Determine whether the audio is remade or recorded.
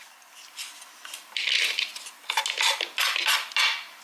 recorded